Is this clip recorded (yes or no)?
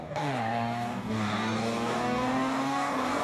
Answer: no